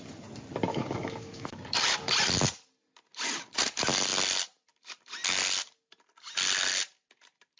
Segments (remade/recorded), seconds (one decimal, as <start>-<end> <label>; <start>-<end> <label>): 0.0-0.7 recorded; 0.7-1.6 remade; 1.6-7.6 recorded